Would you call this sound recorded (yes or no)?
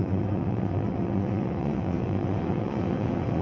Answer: no